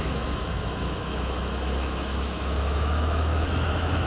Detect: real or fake fake